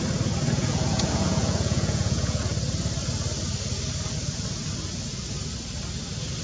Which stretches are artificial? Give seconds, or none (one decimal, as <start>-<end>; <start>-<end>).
0.6-2.4